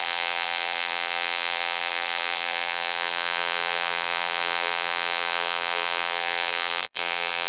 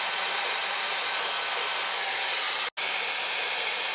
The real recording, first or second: second